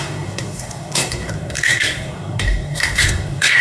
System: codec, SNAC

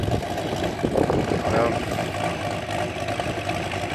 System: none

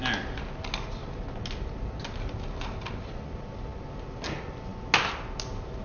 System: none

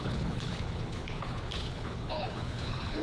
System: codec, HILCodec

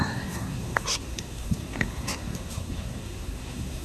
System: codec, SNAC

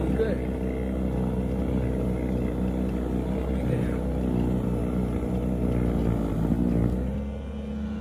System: none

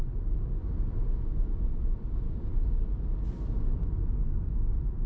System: none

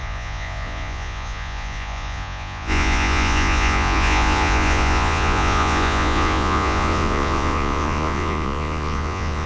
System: vocoder, Vocos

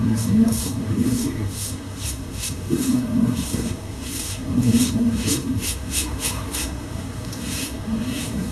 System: codec, SNAC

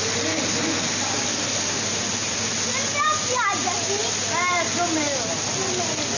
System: none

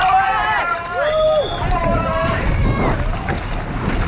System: none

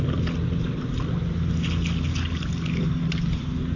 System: none